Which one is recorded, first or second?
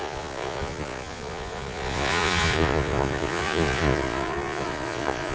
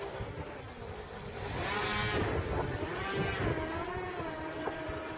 second